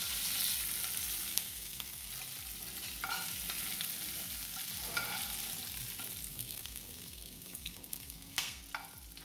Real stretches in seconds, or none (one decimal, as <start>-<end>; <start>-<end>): 0.0-1.3; 2.1-6.3; 8.6-9.2